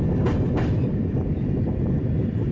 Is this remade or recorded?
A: recorded